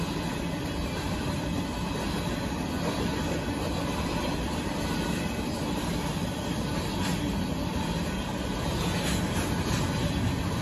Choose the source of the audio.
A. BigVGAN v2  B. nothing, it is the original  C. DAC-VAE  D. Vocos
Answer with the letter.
B